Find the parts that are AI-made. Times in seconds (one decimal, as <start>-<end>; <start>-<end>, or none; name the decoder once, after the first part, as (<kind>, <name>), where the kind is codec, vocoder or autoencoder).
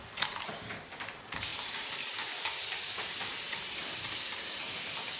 1.5-4.6 (vocoder, BigVGAN v2)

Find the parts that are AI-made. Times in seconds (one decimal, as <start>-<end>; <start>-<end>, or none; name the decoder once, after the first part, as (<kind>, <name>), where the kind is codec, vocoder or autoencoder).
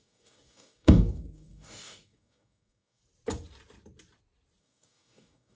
0.0-3.0 (codec, DAC); 4.6-5.5